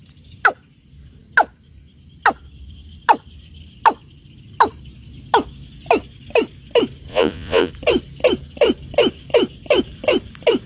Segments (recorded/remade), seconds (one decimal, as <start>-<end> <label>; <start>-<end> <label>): 0.0-7.1 recorded; 7.1-7.7 remade; 7.7-10.7 recorded